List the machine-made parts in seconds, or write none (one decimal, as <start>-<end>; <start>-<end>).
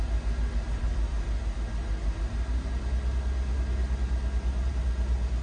none